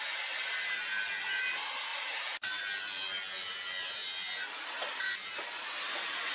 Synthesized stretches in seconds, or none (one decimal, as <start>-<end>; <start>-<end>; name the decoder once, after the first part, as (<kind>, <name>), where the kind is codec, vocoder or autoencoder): 1.9-2.6 (vocoder, BigVGAN v2)